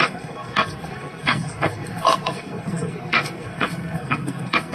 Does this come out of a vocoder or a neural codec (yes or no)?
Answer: yes